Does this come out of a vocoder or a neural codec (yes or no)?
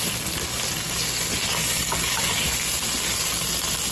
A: no